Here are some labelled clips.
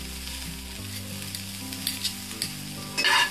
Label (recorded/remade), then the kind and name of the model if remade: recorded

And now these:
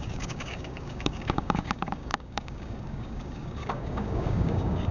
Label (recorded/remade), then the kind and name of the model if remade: remade, codec, DAC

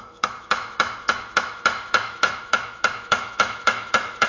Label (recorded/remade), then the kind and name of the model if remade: remade, autoencoder, DAC-VAE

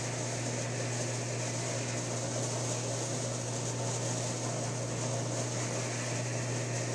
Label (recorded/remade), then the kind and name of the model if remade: recorded